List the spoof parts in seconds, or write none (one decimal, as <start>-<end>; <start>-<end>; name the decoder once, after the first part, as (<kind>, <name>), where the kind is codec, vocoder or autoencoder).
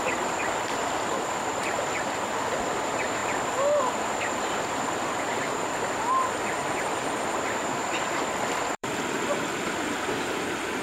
0.0-1.5 (vocoder, BigVGAN v2); 2.7-10.8